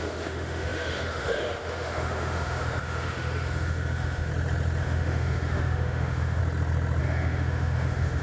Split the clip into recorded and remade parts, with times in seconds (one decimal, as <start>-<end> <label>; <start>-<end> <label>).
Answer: 0.0-4.3 remade; 4.3-4.8 recorded; 4.8-6.4 remade; 6.4-7.0 recorded; 7.0-8.2 remade